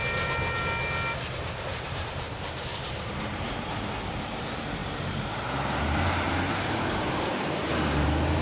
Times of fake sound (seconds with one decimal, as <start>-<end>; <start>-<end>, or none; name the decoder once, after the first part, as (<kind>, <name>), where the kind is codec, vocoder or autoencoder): 1.7-2.3 (vocoder, BigVGAN v2); 2.7-3.9; 4.8-7.5